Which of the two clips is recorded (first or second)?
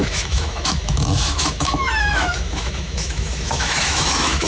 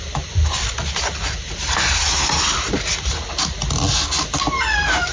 second